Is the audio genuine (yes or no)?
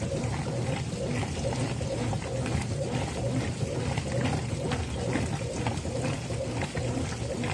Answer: yes